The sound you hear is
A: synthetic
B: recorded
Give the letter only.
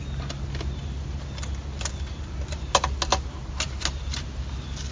B